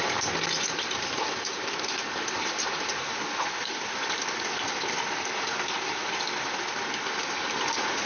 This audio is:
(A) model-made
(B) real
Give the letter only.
B